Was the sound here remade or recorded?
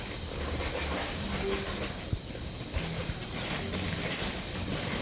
remade